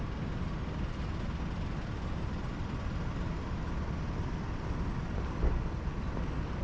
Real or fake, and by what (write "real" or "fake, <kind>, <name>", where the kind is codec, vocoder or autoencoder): real